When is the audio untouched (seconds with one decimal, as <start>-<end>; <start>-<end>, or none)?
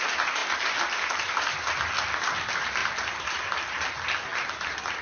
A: 0.0-5.0